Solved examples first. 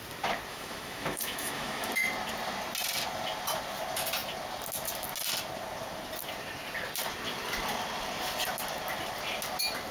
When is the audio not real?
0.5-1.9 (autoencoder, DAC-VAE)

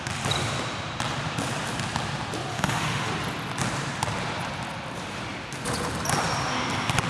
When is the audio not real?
2.5-3.1 (autoencoder, DAC-VAE)

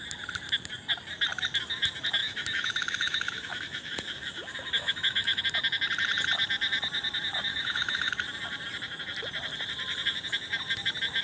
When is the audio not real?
2.2-5.4 (autoencoder, DAC-VAE); 7.5-8.1